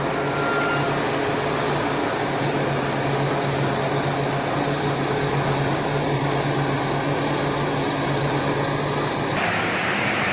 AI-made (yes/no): no